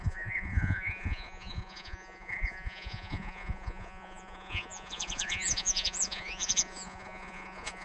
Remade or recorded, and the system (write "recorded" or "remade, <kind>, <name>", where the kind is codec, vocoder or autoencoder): remade, vocoder, Vocos